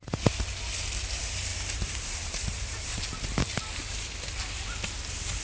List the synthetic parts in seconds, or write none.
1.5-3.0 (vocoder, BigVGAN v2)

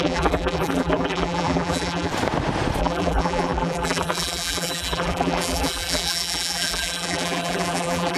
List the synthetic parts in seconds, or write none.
0.0-2.1 (vocoder, BigVGAN v2); 2.8-8.2